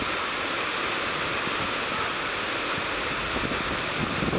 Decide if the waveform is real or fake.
real